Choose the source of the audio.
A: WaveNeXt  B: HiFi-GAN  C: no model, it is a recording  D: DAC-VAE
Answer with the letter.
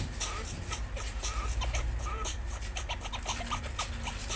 C